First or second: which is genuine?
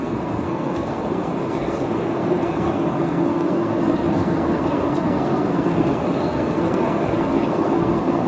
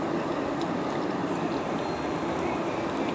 second